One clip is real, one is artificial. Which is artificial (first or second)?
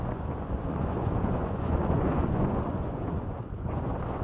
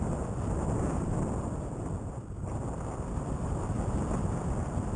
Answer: first